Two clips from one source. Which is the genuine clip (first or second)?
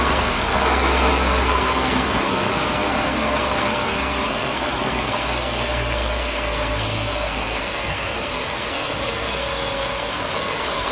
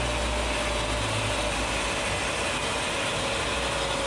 second